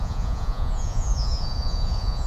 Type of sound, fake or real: fake